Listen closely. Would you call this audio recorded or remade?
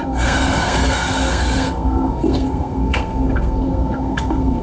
remade